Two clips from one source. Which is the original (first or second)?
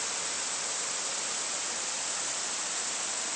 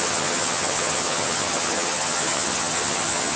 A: first